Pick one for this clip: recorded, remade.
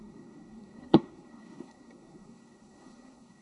remade